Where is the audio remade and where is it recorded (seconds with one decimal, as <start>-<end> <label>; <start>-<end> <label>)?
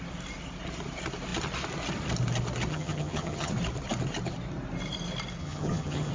0.0-2.7 recorded; 2.7-3.5 remade; 3.5-5.4 recorded; 5.4-6.1 remade